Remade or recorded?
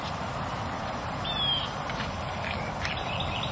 remade